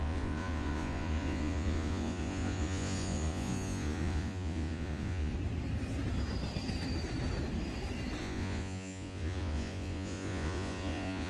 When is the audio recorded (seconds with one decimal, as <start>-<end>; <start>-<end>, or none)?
5.3-8.2